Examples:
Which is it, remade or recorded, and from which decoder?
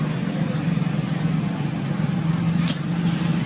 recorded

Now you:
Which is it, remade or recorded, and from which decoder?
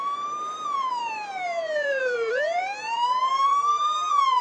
remade, vocoder, BigVGAN v2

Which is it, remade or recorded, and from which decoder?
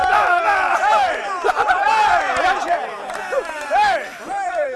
remade, vocoder, BigVGAN v2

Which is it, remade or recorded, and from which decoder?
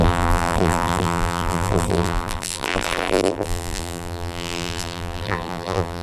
remade, vocoder, BigVGAN v2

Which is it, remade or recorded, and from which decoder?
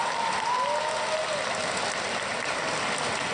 recorded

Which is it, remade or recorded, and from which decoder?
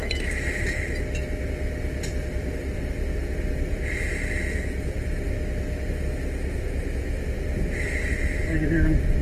recorded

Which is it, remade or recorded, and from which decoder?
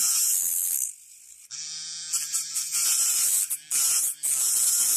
remade, vocoder, BigVGAN v2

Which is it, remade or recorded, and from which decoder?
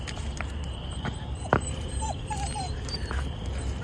remade, vocoder, BigVGAN v2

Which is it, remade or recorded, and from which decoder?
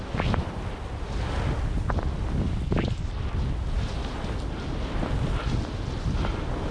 recorded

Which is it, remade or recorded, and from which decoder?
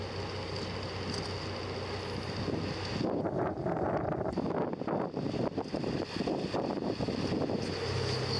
recorded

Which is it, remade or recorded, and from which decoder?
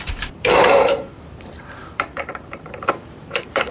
remade, vocoder, BigVGAN v2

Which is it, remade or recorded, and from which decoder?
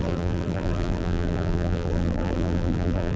remade, vocoder, BigVGAN v2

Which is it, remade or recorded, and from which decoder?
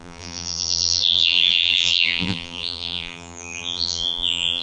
remade, vocoder, BigVGAN v2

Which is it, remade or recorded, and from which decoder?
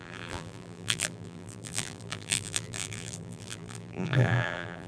remade, vocoder, BigVGAN v2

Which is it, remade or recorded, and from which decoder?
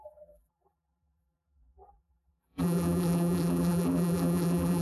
remade, vocoder, BigVGAN v2